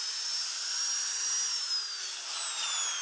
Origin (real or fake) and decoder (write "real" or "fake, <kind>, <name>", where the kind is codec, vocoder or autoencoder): real